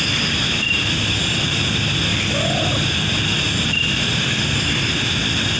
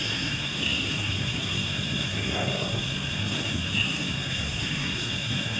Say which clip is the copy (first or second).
second